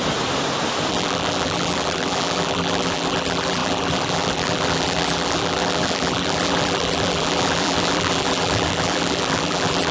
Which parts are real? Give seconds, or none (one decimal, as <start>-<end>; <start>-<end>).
0.0-0.9